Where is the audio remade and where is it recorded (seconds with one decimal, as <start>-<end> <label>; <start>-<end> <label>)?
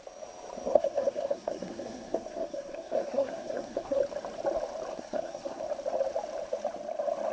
0.0-0.7 recorded; 0.7-4.0 remade; 4.0-4.9 recorded; 4.9-5.6 remade; 5.6-7.3 recorded